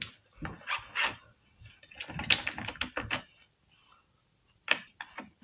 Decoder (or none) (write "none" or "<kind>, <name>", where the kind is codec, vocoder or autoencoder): none